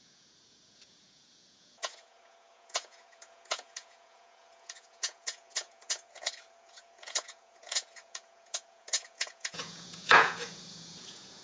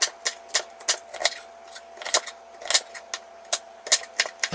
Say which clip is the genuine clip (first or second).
second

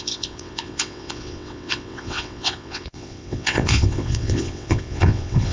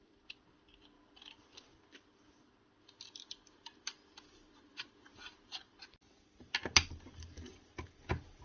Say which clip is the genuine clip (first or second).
second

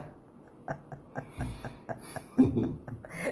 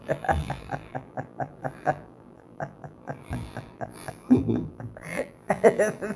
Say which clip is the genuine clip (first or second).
first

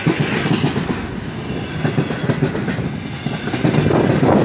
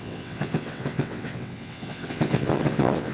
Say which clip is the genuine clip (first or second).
first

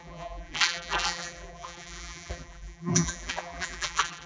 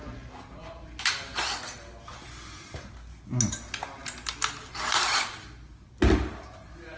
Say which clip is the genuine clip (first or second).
second